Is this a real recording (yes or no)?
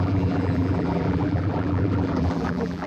no